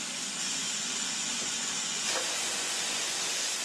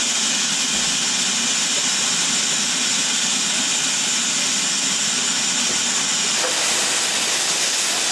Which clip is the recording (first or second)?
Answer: second